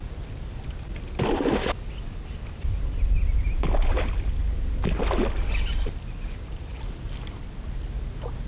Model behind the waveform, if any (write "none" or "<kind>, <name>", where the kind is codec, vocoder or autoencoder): none